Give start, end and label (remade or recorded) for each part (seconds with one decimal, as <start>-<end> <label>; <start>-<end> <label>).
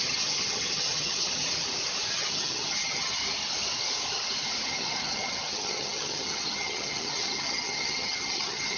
0.0-1.4 remade; 1.4-2.1 recorded; 2.1-3.2 remade; 3.2-4.7 recorded; 4.7-8.8 remade